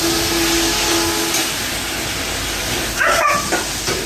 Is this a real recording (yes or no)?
yes